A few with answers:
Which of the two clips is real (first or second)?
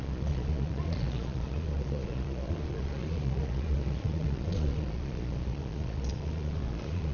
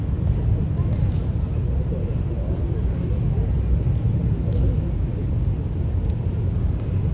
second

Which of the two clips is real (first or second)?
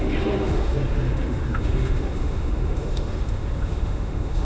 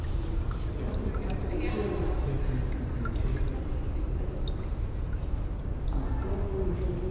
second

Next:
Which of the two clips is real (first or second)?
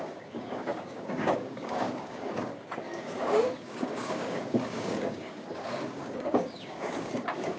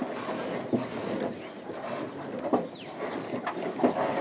second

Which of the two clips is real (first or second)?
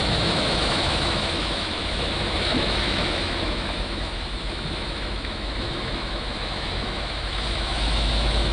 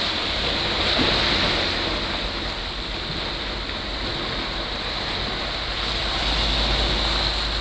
second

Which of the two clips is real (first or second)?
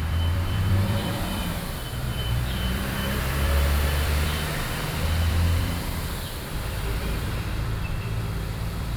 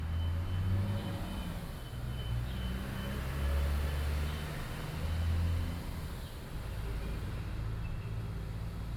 second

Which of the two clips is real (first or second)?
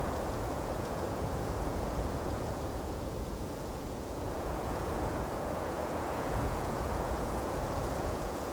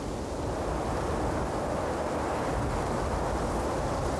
second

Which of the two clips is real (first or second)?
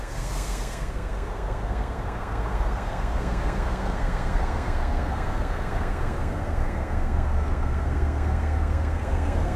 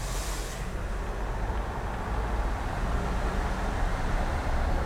second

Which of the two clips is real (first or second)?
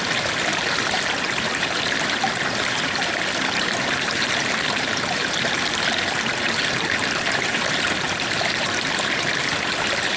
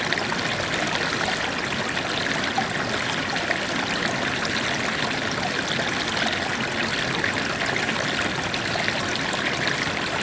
second